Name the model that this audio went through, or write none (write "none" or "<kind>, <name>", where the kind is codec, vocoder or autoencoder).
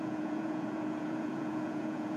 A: vocoder, Vocos